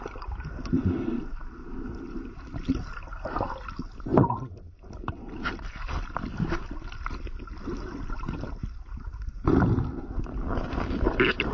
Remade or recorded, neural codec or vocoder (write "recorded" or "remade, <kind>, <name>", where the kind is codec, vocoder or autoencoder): recorded